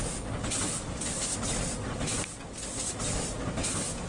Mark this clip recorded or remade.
recorded